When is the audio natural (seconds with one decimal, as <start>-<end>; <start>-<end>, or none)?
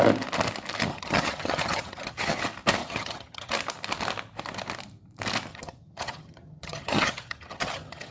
0.0-0.9; 2.4-2.8; 3.5-5.5